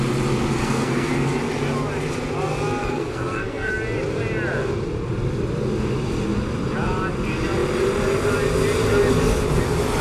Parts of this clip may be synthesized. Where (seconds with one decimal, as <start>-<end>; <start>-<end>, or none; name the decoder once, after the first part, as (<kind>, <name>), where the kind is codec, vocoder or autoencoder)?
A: 0.6-1.1 (codec, SNAC); 2.8-3.7